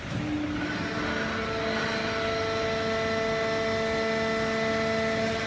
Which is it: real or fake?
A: real